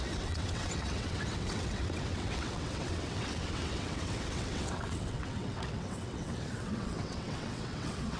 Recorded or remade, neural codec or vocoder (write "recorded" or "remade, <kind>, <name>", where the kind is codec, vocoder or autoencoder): remade, vocoder, WaveNeXt